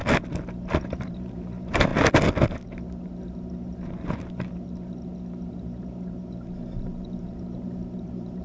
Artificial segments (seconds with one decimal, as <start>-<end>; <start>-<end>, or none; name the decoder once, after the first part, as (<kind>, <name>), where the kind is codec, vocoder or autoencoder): 0.8-1.9 (vocoder, BigVGAN v2); 6.8-8.4